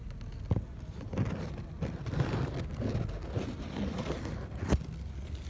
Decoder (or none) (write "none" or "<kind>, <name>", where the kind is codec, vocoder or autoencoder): none